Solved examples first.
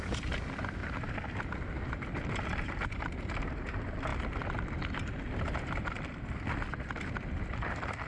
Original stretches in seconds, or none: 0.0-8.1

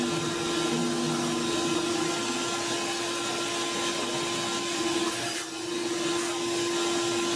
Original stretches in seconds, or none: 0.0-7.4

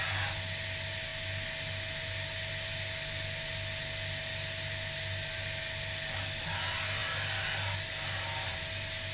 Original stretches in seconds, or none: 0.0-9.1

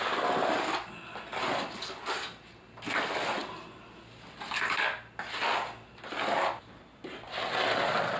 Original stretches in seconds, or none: 0.0-8.2